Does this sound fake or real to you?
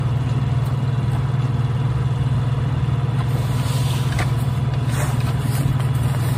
real